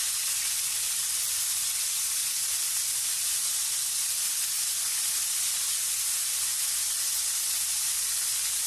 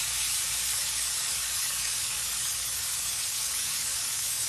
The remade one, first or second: second